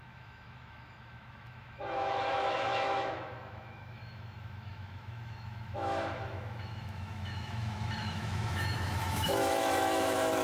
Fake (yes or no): yes